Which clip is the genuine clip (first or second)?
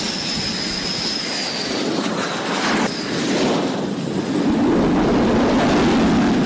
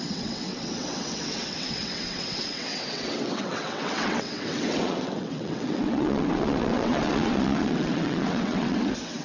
first